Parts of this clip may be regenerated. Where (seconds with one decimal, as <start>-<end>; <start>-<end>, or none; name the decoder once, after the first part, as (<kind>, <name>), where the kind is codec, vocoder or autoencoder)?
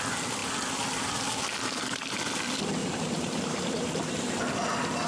2.8-4.2 (vocoder, BigVGAN v2)